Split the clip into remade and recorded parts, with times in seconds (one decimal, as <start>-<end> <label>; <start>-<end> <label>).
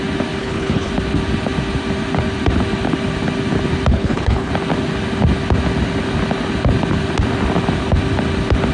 0.0-0.4 recorded; 0.4-0.9 remade; 0.9-3.9 recorded; 3.9-4.5 remade; 4.5-8.7 recorded